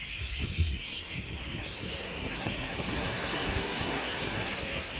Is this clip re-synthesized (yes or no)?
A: yes